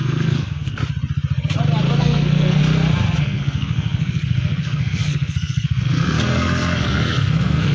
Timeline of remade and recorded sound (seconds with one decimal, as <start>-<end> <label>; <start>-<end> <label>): 0.0-0.8 remade; 0.8-2.0 recorded; 2.0-2.6 remade; 2.6-3.2 recorded; 3.2-7.7 remade